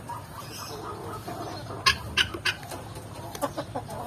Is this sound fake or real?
real